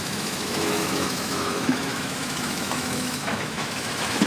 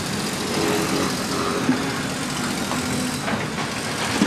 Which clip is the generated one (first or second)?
first